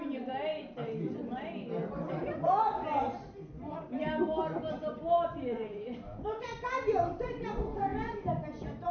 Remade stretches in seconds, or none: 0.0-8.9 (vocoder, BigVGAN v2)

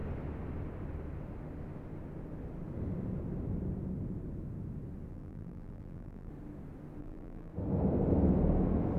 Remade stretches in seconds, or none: 5.1-6.3 (vocoder, BigVGAN v2); 7.0-7.5